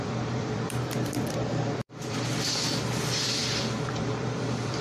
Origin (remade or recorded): remade